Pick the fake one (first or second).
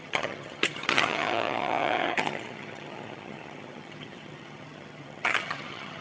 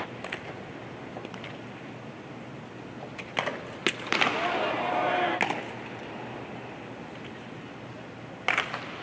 first